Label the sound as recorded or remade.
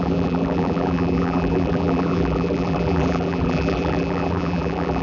remade